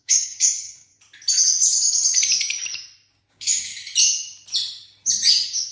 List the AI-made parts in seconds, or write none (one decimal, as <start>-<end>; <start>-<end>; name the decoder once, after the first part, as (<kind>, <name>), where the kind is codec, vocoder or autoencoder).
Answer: 0.0-0.9 (codec, DAC); 3.3-3.7; 5.3-5.7